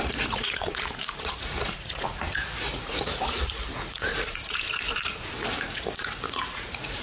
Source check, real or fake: fake